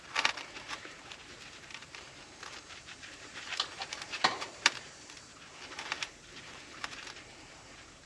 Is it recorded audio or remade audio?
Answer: remade